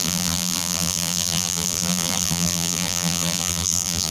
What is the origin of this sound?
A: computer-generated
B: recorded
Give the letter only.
A